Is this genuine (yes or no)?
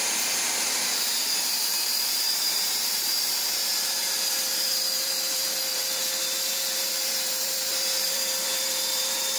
no